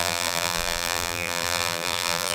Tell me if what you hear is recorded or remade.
remade